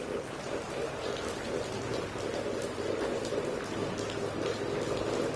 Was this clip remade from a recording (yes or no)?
no